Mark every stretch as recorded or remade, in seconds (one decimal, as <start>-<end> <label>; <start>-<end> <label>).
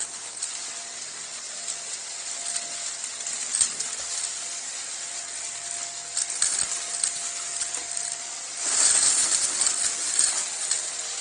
0.0-11.2 recorded